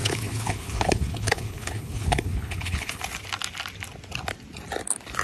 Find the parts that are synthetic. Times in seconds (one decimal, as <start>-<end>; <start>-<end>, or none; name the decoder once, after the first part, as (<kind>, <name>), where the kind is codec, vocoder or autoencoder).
0.0-3.0 (codec, HILCodec)